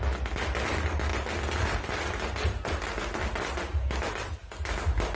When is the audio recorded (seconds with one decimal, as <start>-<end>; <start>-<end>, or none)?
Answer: 0.0-5.2